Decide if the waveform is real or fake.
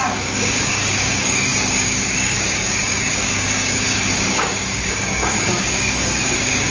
fake